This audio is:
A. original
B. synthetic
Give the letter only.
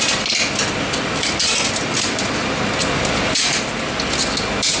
A